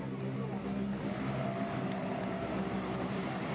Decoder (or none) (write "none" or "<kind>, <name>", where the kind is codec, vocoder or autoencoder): none